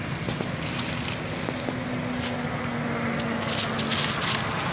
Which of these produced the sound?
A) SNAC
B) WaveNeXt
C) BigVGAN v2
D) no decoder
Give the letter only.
D